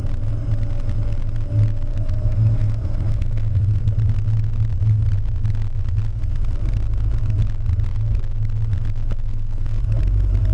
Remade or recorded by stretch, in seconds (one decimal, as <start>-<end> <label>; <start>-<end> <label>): 0.0-1.9 recorded; 1.9-3.8 remade; 3.8-9.3 recorded; 9.3-9.8 remade; 9.8-10.5 recorded